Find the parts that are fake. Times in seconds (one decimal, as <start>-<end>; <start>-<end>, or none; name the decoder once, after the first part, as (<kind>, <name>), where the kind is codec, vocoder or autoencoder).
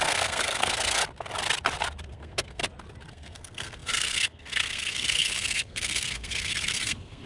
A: 0.0-1.0 (codec, SNAC); 2.1-2.6; 3.1-7.3